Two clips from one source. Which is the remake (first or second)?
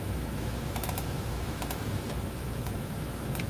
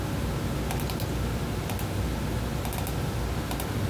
first